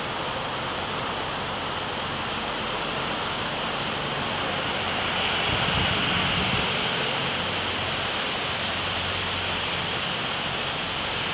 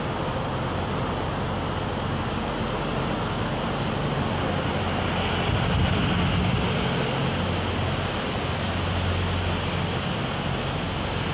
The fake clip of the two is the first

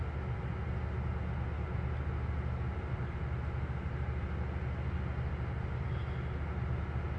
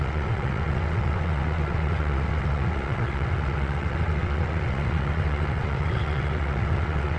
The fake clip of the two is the second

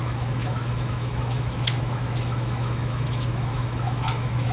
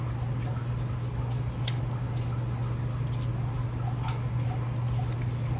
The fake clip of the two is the first